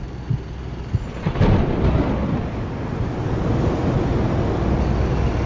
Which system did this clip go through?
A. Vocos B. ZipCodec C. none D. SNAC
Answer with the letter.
C